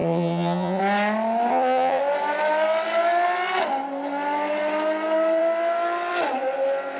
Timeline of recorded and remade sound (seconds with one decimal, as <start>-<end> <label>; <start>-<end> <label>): 0.0-0.8 remade; 0.8-1.5 recorded; 1.5-2.0 remade; 2.0-7.0 recorded